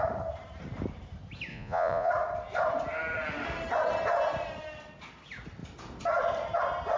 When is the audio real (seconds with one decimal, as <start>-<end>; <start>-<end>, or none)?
0.0-1.5; 2.1-7.0